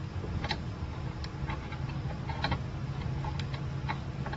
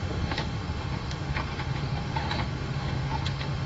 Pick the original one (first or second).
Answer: first